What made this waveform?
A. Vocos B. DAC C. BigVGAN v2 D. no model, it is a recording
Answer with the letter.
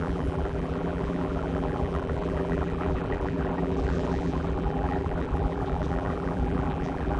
C